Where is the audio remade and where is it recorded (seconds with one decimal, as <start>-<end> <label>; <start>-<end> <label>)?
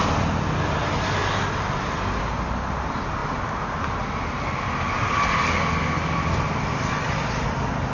0.0-7.9 recorded